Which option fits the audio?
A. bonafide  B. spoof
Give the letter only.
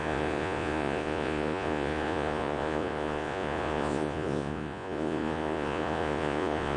B